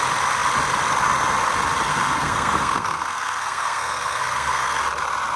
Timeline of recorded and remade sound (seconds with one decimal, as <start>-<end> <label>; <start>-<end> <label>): 0.0-1.9 recorded; 1.9-4.8 remade; 4.8-5.4 recorded